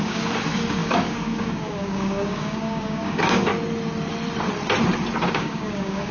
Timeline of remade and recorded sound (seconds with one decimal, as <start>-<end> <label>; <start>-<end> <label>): 0.0-3.5 remade; 3.5-5.2 recorded; 5.2-6.1 remade